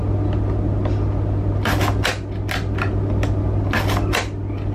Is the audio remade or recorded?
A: recorded